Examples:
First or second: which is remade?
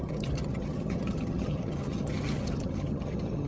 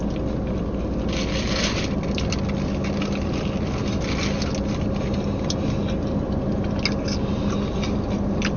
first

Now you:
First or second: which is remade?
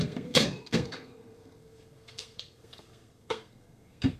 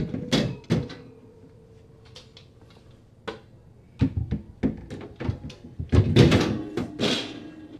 first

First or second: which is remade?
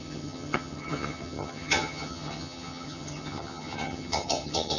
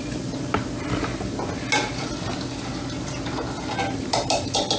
first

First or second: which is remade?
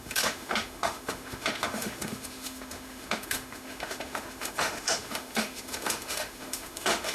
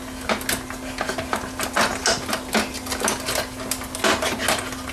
first